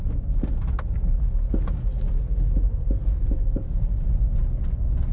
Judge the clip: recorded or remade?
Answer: recorded